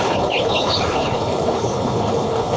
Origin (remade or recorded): remade